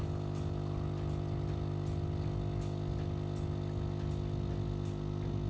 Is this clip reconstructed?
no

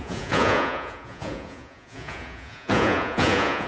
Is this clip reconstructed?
yes